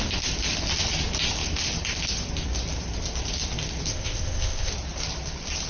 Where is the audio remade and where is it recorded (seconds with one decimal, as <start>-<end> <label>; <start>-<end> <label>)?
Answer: 0.0-3.9 recorded; 3.9-4.7 remade; 4.7-5.7 recorded